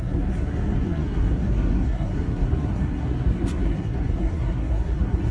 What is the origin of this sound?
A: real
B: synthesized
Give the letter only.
B